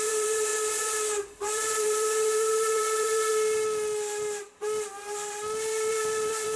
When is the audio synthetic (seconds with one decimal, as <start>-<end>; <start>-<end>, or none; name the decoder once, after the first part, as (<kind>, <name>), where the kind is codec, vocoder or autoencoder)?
0.0-0.5 (vocoder, BigVGAN v2); 1.3-3.3; 5.9-6.6